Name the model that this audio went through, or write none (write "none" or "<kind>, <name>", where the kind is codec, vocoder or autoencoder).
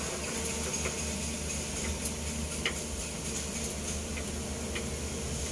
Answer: none